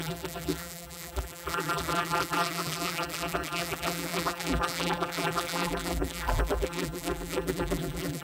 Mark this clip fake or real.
fake